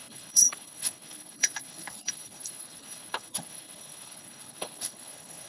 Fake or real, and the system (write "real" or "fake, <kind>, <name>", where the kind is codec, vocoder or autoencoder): fake, codec, HILCodec